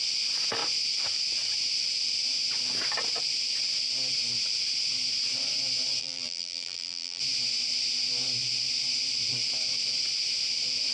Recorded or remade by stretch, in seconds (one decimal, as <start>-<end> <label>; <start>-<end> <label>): 0.0-6.0 recorded; 6.0-7.2 remade; 7.2-10.9 recorded